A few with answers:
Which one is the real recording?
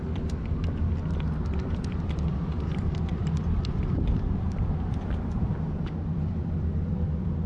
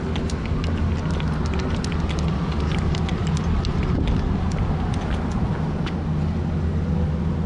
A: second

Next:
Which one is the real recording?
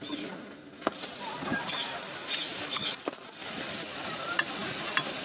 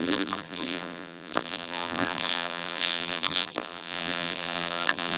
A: first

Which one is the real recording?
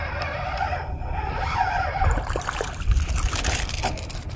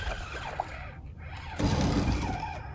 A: second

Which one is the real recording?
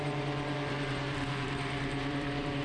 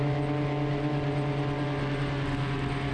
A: second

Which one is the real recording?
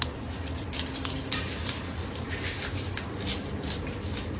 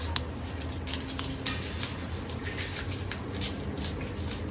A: second